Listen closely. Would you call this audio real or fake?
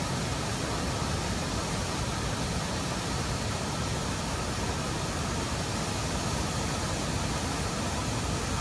real